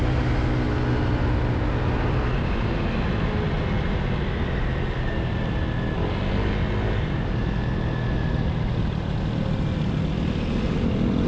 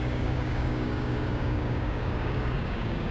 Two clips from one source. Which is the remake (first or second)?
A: second